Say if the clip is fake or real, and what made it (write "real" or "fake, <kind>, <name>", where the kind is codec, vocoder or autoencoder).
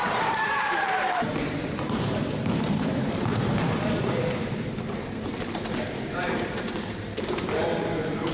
fake, vocoder, BigVGAN v2